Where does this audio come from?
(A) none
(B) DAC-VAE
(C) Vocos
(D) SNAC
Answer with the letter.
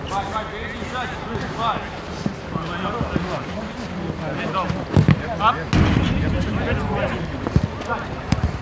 A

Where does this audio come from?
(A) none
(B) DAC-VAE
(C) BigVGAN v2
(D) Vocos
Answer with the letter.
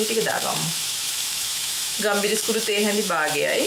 B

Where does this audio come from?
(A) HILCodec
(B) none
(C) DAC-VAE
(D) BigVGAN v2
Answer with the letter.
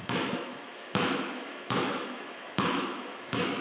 C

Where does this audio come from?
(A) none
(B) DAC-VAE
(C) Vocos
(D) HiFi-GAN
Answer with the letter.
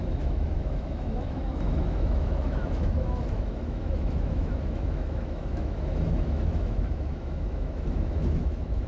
B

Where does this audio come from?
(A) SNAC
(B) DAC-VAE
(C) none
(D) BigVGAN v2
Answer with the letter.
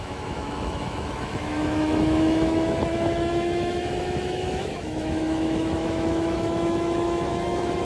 B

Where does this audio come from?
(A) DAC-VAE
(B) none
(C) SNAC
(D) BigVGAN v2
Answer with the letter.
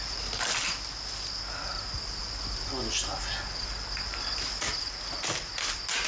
B